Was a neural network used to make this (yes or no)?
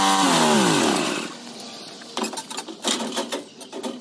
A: no